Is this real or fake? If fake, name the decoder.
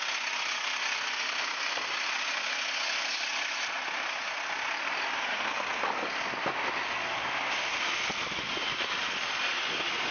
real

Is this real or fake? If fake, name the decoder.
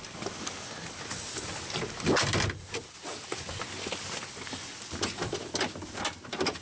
real